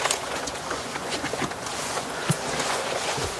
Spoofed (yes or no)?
yes